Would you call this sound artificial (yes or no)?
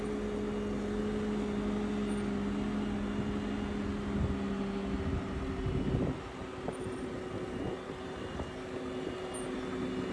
no